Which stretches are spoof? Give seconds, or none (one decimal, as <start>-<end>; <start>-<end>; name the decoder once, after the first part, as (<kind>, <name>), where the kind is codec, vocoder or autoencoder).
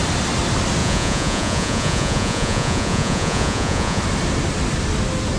0.8-4.0 (vocoder, Vocos)